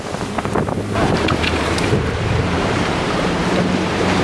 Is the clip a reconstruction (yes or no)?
yes